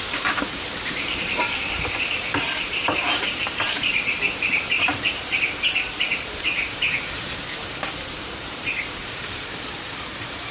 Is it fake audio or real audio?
fake